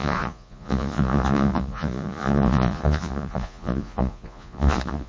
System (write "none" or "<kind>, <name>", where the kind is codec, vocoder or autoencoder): vocoder, Vocos